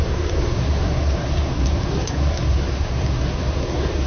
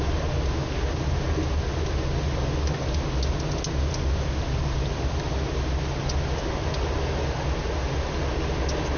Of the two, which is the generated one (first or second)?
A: first